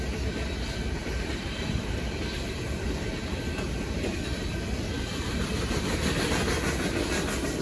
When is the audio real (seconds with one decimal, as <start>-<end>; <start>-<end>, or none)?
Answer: 0.0-1.0; 3.5-4.1; 5.5-7.6